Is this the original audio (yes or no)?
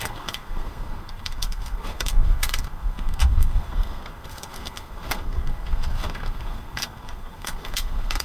no